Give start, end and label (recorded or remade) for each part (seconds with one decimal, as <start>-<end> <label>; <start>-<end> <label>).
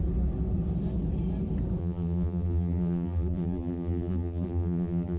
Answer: 0.0-1.8 recorded; 1.8-5.2 remade